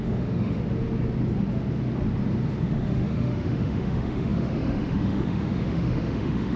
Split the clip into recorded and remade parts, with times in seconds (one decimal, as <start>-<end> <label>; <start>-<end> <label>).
0.0-0.6 remade; 0.6-2.6 recorded; 2.6-6.6 remade